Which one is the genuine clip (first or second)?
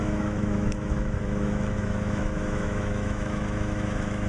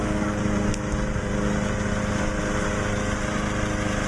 second